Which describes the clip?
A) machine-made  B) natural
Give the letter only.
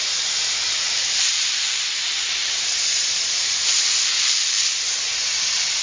A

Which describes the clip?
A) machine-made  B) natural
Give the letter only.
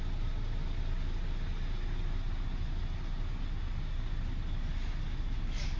B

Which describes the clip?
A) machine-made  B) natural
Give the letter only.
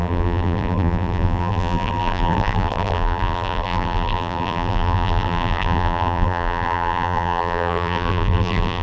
A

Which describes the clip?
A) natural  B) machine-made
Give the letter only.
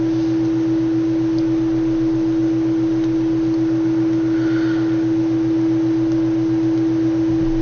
A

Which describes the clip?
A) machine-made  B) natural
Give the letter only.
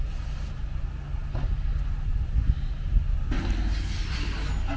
B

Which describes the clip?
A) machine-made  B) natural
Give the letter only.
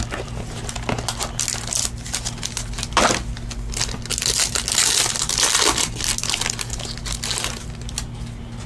B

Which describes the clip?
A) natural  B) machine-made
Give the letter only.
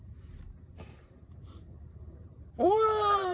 B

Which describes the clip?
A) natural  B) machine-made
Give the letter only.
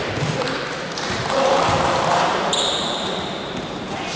B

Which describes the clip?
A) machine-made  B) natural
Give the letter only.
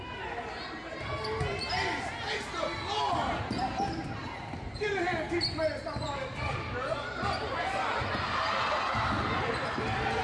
B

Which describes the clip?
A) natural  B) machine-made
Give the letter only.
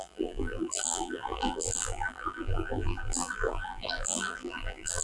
B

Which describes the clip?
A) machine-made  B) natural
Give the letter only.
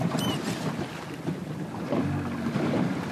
B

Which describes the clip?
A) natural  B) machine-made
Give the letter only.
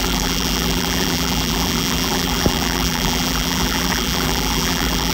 B